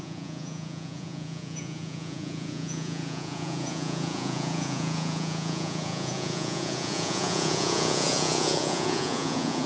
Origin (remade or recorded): remade